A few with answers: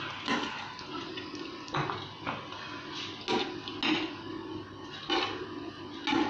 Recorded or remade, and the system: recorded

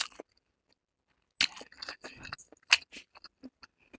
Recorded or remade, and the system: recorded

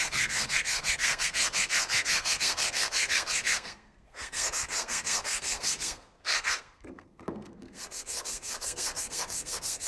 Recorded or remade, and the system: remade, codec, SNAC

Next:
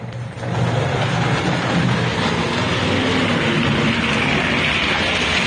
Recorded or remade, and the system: recorded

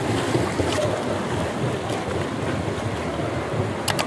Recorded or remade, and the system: recorded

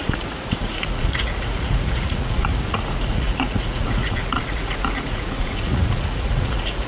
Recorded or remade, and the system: remade, vocoder, Vocos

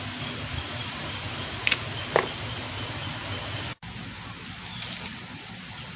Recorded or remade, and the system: recorded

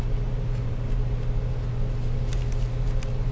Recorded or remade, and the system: recorded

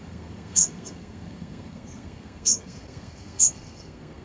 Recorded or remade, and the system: remade, codec, SNAC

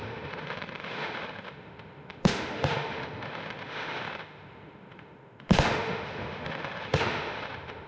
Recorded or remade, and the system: remade, autoencoder, DAC-VAE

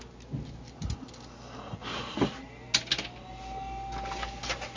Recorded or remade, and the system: recorded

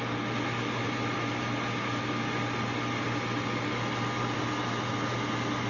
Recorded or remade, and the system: recorded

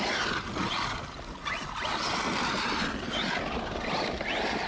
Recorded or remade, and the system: recorded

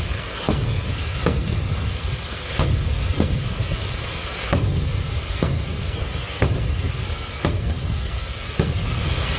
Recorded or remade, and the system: remade, codec, SNAC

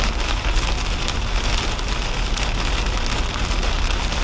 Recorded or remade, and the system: recorded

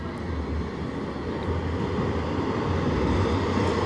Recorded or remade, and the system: recorded